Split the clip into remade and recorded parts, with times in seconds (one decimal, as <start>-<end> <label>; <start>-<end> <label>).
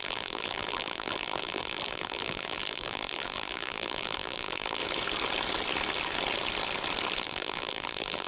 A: 0.0-4.8 remade; 4.8-7.2 recorded; 7.2-8.3 remade